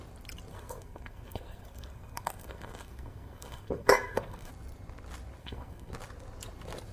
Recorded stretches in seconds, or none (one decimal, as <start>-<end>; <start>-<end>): 0.0-0.5; 4.5-5.4; 5.9-6.9